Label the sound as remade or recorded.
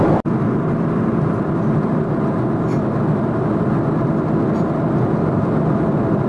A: recorded